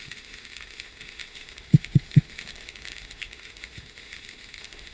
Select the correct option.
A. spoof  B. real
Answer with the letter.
A